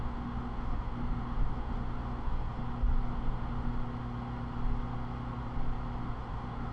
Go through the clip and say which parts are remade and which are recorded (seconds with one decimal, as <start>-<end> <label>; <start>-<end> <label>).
0.0-2.6 remade; 2.6-3.1 recorded; 3.1-3.7 remade; 3.7-6.0 recorded; 6.0-6.7 remade